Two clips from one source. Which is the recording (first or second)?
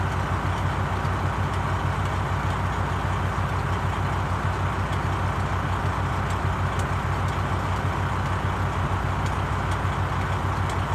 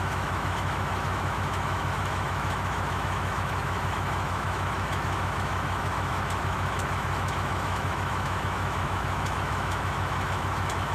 first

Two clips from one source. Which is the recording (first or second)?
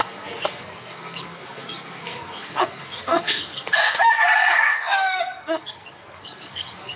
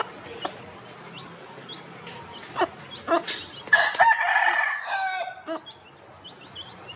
second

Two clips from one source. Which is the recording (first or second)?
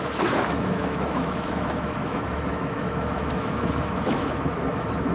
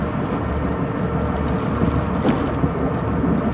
second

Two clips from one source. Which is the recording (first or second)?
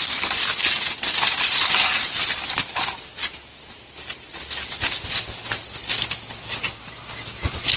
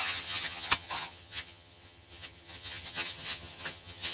first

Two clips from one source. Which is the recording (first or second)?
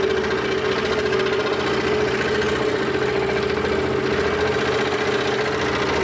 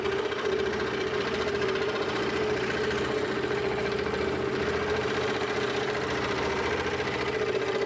first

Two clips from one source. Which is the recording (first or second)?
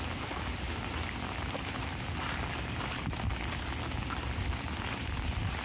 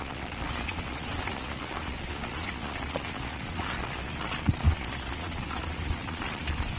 first